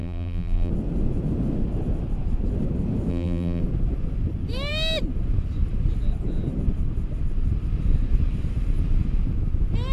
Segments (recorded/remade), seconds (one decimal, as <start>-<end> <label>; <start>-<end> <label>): 0.0-0.7 remade; 0.7-3.1 recorded; 3.1-3.6 remade; 3.6-9.9 recorded